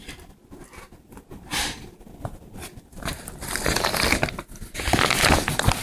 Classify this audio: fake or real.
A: real